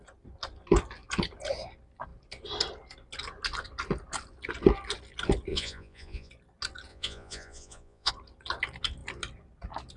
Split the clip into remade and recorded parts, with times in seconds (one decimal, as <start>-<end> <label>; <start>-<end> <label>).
0.0-5.5 recorded; 5.5-6.3 remade; 6.3-6.9 recorded; 6.9-8.1 remade; 8.1-10.0 recorded